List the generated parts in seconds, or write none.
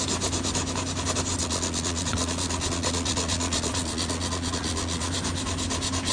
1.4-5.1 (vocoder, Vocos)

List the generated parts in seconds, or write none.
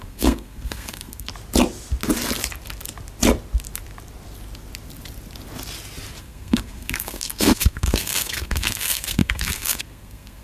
0.0-1.3 (codec, SNAC); 6.2-10.4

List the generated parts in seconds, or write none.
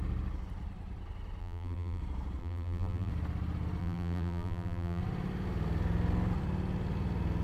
1.4-2.0 (vocoder, BigVGAN v2); 2.4-3.1; 3.8-5.0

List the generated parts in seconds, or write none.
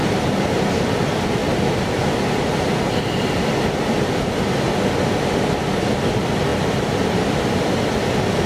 0.0-0.5 (vocoder, BigVGAN v2)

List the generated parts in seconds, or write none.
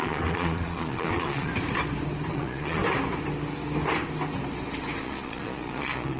0.0-1.5 (vocoder, Vocos); 2.3-2.8; 5.0-6.2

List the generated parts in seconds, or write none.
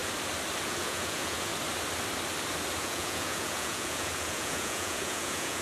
0.6-1.5 (vocoder, Vocos); 2.8-5.6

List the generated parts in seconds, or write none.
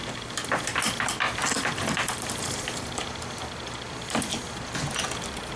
none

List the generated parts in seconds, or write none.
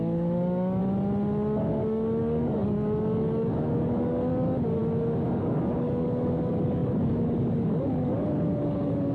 0.0-0.8 (codec, DAC); 1.6-4.8; 5.3-9.1